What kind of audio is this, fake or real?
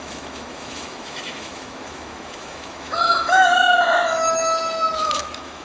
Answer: fake